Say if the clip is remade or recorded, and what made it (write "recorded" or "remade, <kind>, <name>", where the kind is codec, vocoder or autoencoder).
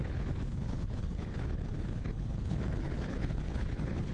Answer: remade, codec, HILCodec